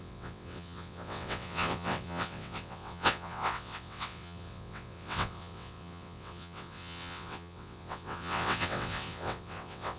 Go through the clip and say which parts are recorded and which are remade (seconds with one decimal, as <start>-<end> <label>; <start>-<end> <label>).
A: 0.0-10.0 remade